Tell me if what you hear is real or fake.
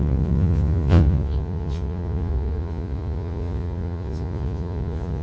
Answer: fake